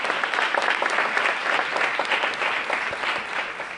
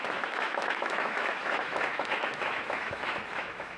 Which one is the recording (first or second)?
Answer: first